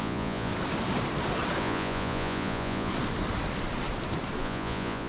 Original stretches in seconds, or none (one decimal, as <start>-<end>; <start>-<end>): 0.5-1.6; 2.9-4.4